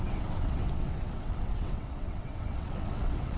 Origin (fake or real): fake